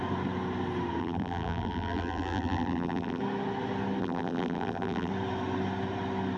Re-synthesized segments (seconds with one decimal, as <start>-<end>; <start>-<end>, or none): 1.0-3.2; 4.0-5.1